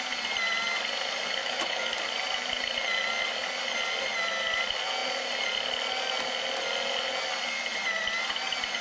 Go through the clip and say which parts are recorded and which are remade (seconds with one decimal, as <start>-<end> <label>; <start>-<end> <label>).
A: 0.0-1.4 recorded; 1.4-2.0 remade; 2.0-8.8 recorded